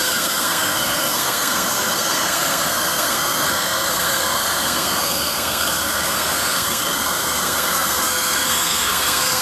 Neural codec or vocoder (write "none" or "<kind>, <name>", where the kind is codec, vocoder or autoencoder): codec, SNAC